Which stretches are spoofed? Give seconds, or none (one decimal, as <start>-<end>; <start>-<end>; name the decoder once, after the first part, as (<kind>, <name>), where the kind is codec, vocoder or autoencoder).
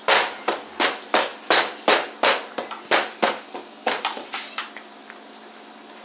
none